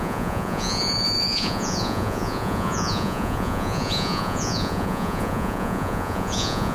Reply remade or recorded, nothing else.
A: remade